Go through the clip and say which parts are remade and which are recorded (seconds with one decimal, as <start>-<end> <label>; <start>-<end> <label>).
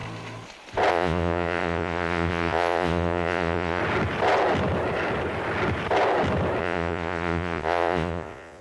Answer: 0.0-0.9 recorded; 0.9-3.8 remade; 3.8-6.6 recorded; 6.6-8.6 remade